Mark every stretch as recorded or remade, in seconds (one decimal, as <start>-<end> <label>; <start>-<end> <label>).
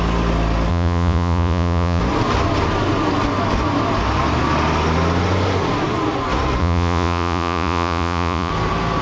0.0-0.7 recorded; 0.7-2.0 remade; 2.0-6.6 recorded; 6.6-8.5 remade; 8.5-9.0 recorded